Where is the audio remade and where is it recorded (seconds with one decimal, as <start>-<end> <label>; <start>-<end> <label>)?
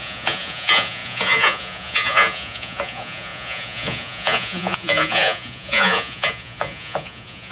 0.0-7.5 remade